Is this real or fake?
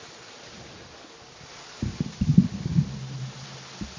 real